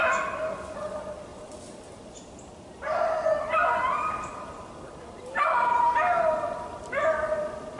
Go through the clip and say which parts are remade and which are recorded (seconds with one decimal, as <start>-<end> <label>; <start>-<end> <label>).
0.0-7.8 recorded